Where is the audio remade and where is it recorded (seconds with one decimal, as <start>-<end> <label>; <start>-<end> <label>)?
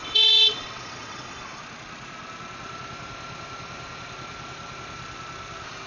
0.0-1.6 remade; 1.6-5.9 recorded